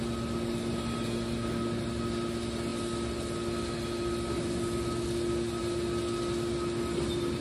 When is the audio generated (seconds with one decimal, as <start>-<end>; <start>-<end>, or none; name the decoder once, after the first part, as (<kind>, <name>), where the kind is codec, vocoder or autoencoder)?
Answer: none